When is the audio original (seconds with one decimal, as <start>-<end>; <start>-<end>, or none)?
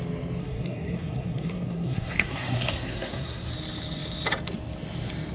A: 0.0-0.4; 3.5-5.3